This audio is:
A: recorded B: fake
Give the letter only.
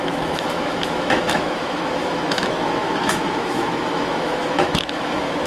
B